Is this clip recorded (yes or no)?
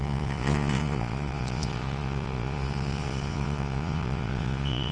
no